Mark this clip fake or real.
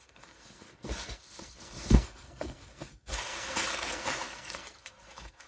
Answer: fake